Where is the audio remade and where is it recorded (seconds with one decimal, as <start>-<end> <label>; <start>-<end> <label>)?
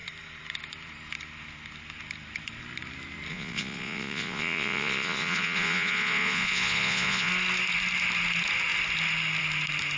0.0-3.3 recorded; 3.3-7.3 remade; 7.3-10.0 recorded